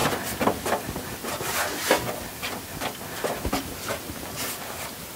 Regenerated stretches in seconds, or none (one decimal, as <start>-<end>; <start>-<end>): none